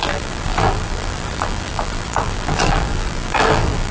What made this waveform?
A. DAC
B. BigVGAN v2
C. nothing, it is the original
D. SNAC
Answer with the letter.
B